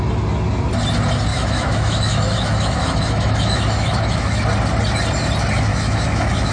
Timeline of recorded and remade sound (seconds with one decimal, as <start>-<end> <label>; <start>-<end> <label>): 0.0-1.3 recorded; 1.3-4.4 remade; 4.4-5.7 recorded; 5.7-6.5 remade